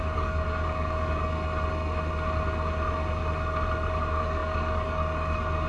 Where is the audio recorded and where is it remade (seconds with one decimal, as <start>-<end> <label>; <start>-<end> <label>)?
0.0-1.2 remade; 1.2-4.0 recorded; 4.0-5.7 remade